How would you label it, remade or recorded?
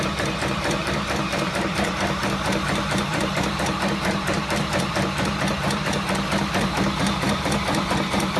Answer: remade